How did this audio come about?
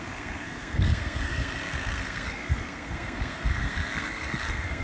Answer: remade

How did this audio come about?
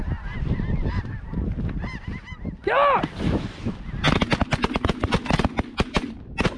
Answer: recorded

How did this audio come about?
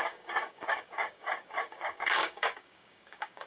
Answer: remade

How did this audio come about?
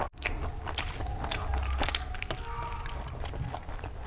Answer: recorded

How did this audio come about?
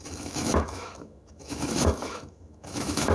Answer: remade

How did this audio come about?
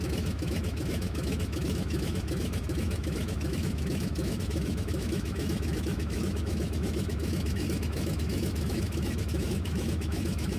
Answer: remade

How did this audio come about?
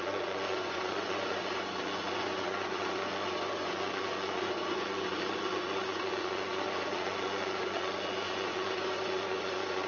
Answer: remade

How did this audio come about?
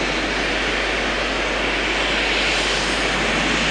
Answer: recorded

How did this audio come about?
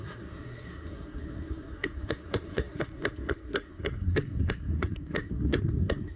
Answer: remade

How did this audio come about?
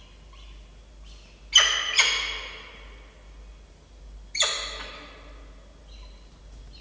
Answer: recorded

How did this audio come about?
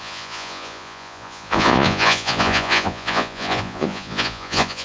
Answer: remade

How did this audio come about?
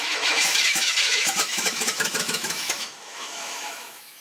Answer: remade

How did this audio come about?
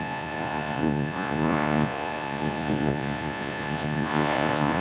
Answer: remade